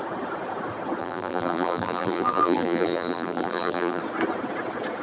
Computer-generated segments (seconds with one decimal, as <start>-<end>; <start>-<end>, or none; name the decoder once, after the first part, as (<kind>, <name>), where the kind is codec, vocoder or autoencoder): 1.0-4.0 (vocoder, BigVGAN v2)